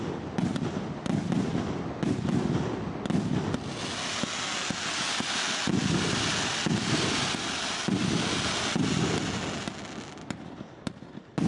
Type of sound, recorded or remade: recorded